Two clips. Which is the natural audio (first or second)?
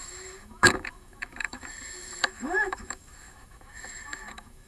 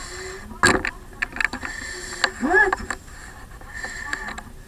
second